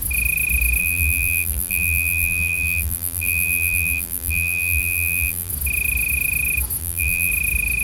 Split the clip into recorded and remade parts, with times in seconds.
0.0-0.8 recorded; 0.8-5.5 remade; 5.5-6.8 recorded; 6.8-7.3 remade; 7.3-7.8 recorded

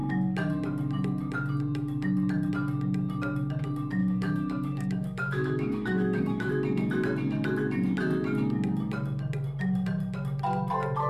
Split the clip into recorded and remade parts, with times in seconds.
0.0-4.0 recorded; 4.0-6.5 remade; 6.5-11.1 recorded

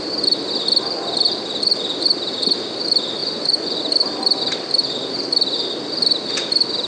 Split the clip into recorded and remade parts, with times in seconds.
0.0-3.2 recorded; 3.2-3.8 remade; 3.8-6.9 recorded